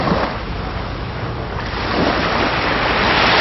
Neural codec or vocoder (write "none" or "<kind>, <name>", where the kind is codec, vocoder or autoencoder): none